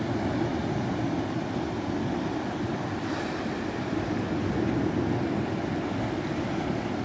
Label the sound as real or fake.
real